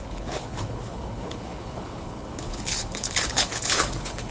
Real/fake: fake